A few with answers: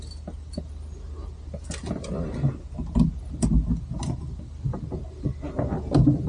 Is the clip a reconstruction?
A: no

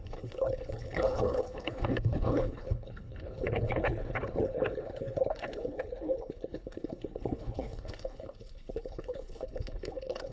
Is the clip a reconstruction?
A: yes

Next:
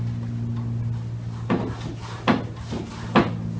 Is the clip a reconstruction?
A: no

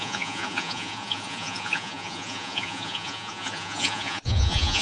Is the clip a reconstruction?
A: yes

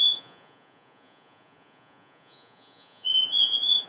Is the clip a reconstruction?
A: yes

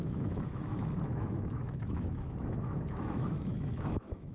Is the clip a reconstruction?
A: yes